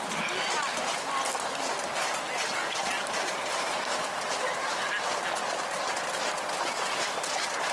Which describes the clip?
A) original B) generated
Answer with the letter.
A